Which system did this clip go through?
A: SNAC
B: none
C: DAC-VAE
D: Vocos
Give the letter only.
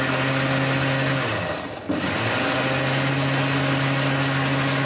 B